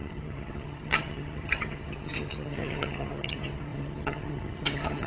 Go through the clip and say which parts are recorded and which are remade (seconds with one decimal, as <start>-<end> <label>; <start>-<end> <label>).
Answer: 0.0-5.1 remade